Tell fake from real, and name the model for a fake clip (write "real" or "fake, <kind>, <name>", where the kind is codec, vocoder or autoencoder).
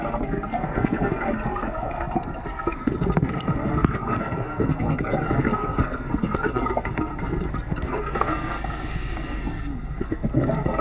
fake, codec, SNAC